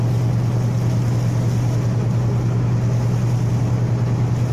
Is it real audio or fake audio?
real